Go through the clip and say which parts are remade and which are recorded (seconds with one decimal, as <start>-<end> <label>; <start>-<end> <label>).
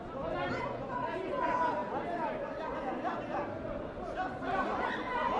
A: 0.0-5.4 recorded